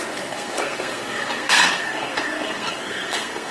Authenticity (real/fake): fake